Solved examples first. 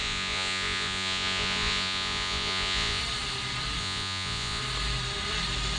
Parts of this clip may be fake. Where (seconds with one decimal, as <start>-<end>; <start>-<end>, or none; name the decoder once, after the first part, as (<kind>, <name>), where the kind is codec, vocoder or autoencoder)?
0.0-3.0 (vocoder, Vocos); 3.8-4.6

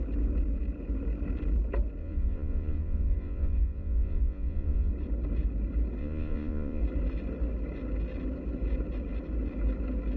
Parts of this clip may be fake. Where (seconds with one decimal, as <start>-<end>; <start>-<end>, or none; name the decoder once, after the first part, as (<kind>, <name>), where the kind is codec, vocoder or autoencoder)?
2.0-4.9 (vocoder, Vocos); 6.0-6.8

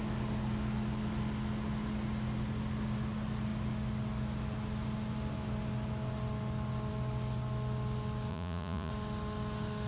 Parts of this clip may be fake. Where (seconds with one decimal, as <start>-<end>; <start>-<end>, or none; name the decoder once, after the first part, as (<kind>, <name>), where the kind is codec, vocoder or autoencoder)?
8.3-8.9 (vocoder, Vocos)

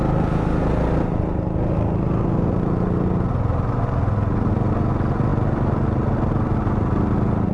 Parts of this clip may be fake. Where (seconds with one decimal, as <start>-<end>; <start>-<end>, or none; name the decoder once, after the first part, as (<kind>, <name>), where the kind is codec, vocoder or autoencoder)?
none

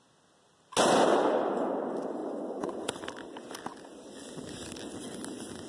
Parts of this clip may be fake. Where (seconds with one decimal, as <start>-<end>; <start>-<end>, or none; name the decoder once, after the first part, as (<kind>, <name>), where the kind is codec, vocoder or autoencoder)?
2.2-2.9 (vocoder, Vocos)

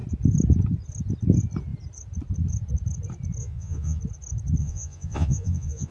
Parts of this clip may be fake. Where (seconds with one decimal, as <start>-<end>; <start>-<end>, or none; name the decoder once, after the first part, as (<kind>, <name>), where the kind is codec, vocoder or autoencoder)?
3.4-4.0 (vocoder, Vocos); 4.6-5.9

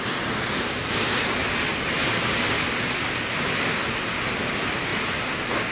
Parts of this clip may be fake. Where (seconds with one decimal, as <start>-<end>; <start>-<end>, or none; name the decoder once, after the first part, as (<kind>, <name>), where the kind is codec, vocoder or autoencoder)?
none

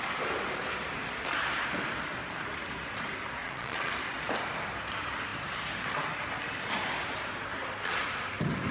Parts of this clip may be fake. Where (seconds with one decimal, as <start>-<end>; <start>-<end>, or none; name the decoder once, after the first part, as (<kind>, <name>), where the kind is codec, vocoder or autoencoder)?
3.4-3.9 (vocoder, Vocos)